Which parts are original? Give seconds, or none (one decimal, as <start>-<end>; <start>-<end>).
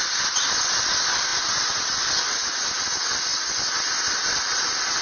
0.0-2.3; 2.9-5.0